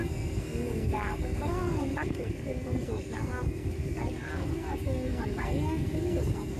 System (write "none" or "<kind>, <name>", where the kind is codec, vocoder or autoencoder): codec, SNAC